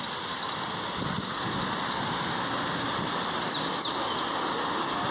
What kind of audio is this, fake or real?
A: real